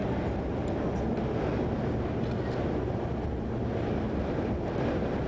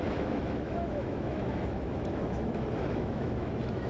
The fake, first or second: second